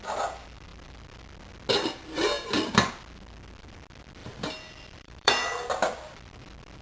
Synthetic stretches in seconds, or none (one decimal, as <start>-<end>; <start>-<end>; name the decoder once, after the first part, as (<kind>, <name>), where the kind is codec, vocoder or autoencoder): 4.2-5.7 (vocoder, BigVGAN v2)